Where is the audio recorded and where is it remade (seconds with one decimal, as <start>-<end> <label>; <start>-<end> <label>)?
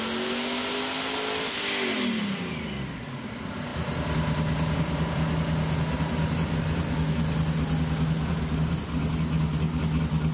0.0-10.3 recorded